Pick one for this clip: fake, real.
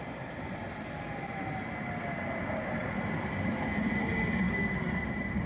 real